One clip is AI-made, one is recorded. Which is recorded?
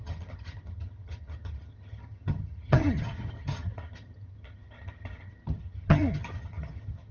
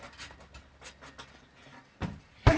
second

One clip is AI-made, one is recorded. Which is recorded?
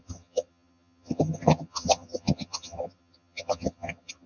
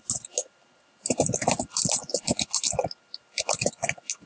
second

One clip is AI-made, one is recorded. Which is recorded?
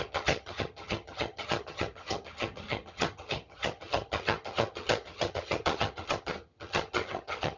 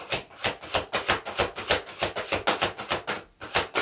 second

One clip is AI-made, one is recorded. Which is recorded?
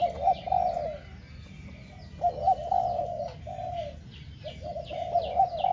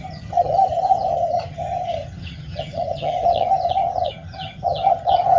first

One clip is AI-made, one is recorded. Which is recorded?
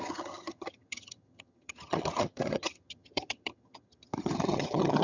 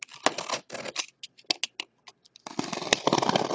second